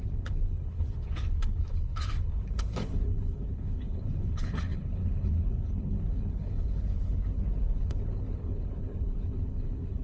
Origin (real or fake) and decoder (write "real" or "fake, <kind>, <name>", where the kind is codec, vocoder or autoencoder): fake, codec, HILCodec